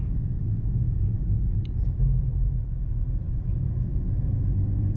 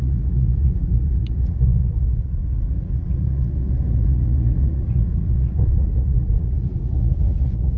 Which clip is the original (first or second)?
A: first